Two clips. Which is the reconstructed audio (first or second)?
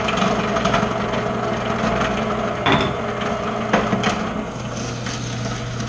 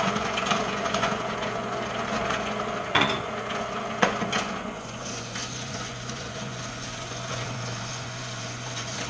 second